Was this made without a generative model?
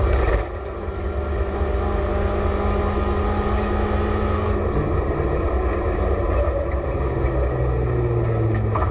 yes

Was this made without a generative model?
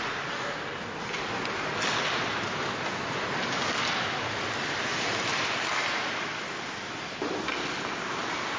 yes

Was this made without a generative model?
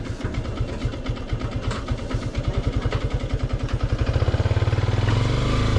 yes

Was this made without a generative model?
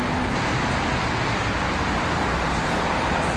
yes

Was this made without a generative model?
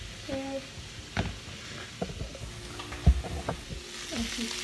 yes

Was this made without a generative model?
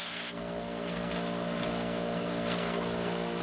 no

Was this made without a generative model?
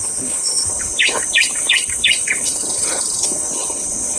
no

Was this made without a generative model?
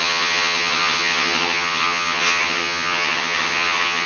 no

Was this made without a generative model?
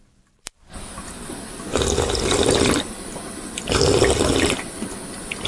no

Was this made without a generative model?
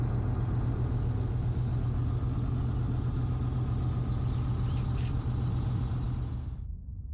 yes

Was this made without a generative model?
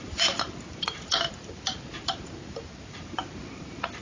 no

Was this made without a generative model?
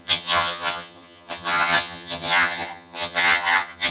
no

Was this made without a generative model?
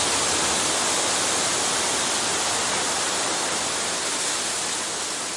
yes